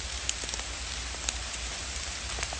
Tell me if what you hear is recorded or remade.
recorded